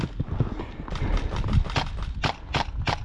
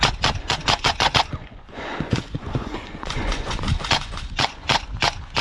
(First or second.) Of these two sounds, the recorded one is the first